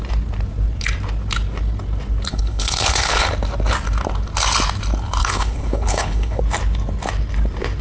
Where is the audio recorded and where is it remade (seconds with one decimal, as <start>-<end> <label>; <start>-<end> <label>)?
0.0-2.3 recorded; 2.3-3.3 remade; 3.3-5.2 recorded; 5.2-6.4 remade; 6.4-7.8 recorded